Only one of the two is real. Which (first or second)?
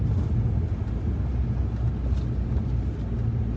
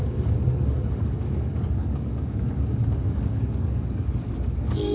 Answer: first